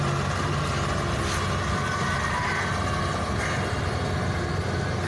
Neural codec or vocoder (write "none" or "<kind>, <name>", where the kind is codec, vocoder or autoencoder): none